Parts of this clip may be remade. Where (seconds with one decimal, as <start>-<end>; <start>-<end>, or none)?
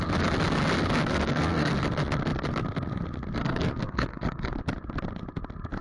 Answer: 1.1-1.7; 3.4-4.5